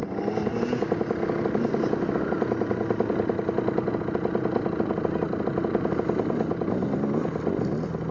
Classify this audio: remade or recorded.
recorded